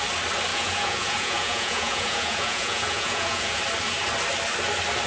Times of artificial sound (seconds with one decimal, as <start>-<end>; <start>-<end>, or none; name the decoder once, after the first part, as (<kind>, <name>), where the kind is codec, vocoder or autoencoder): 0.5-3.6 (vocoder, Vocos)

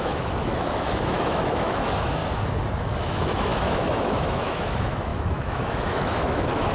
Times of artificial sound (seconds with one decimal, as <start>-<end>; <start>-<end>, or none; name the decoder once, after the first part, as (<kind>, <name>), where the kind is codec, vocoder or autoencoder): 0.0-2.2 (autoencoder, DAC-VAE); 2.8-6.7

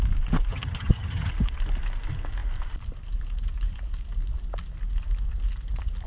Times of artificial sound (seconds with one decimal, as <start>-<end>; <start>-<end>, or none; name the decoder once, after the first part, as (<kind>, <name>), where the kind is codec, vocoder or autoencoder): 0.5-1.3 (vocoder, HiFi-GAN)

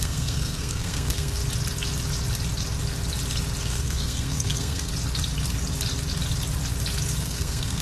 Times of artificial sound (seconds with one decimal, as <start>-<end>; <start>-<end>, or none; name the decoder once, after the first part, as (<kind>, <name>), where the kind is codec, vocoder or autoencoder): 0.0-1.4 (codec, SNAC); 3.6-4.9; 7.2-7.8

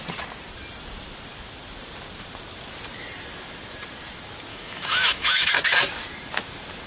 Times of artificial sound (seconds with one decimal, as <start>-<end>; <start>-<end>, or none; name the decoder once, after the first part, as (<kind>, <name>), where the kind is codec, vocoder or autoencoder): 4.5-5.5 (autoencoder, DAC-VAE)

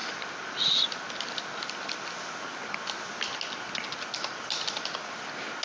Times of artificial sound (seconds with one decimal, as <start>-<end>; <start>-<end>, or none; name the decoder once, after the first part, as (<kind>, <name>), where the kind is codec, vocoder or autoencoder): none

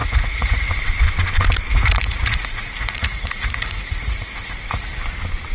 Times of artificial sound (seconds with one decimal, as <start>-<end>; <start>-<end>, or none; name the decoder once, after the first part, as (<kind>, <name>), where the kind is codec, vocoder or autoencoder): 0.0-0.7 (vocoder, Vocos); 1.7-5.0

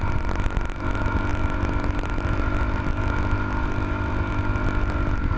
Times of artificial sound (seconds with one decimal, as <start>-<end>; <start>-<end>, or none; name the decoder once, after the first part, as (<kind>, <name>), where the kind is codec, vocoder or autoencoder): none